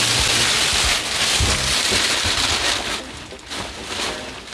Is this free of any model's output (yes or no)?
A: yes